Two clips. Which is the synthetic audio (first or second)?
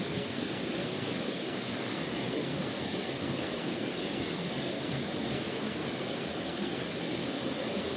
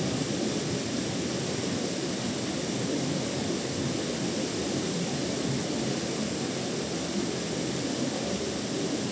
first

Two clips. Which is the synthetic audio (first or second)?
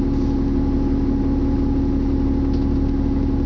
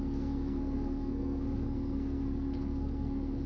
second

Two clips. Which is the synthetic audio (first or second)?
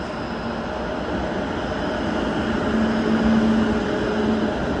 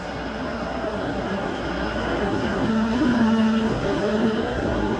second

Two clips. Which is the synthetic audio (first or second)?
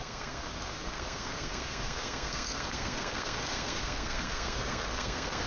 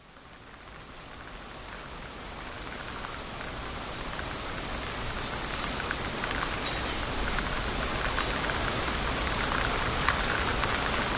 first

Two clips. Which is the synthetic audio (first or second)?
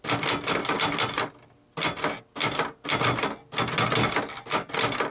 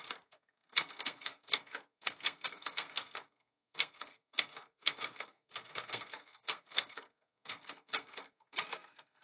second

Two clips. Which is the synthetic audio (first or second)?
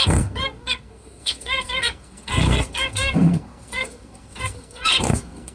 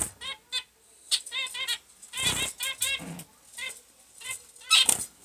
first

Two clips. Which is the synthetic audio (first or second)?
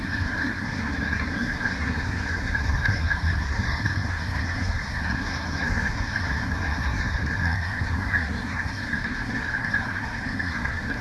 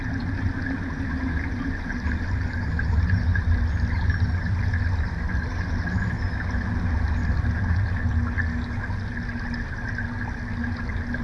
first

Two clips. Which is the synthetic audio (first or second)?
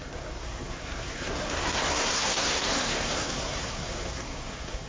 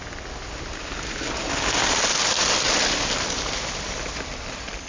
first